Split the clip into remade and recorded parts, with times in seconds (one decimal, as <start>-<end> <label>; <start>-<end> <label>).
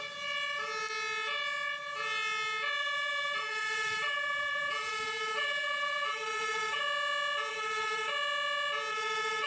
0.0-2.8 recorded; 2.8-6.8 remade; 6.8-7.5 recorded; 7.5-8.1 remade; 8.1-8.9 recorded; 8.9-9.5 remade